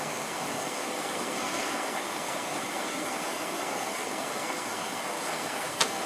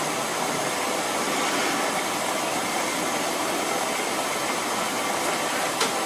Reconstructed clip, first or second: first